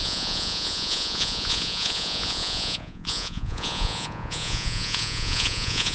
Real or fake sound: fake